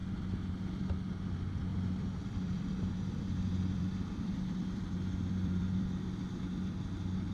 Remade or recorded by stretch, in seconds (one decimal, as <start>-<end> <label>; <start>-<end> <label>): 0.0-1.7 recorded; 1.7-6.1 remade; 6.1-7.3 recorded

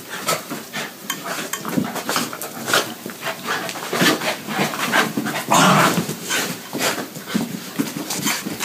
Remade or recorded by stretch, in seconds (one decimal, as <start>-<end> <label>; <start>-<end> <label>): 0.0-1.0 recorded; 1.0-2.3 remade; 2.3-4.7 recorded; 4.7-7.8 remade; 7.8-8.6 recorded

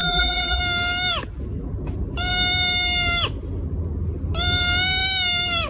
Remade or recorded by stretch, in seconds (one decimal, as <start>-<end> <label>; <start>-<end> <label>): 0.0-0.6 remade; 0.6-5.7 recorded

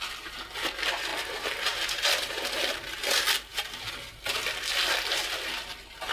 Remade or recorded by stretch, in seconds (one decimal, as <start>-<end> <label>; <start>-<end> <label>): 0.0-1.1 recorded; 1.1-2.9 remade; 2.9-6.1 recorded

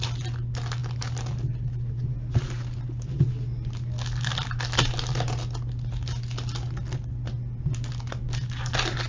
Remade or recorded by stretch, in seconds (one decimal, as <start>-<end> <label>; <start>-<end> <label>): 0.0-9.1 recorded

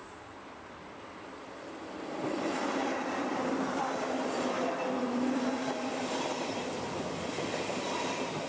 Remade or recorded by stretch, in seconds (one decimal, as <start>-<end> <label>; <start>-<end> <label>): 0.0-3.4 remade; 3.4-3.8 recorded; 3.8-6.3 remade; 6.3-8.5 recorded

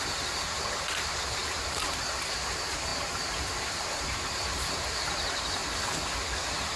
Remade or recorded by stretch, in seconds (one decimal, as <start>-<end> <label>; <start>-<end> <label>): 0.0-5.6 remade; 5.6-6.8 recorded